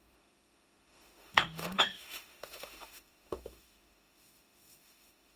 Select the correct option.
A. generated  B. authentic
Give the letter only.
A